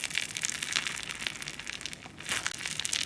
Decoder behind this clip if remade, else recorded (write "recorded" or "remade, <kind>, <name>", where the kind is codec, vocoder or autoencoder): recorded